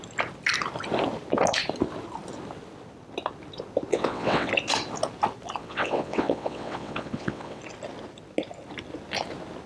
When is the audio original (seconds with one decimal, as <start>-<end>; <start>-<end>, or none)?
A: 0.0-3.9; 4.5-5.6; 7.6-9.7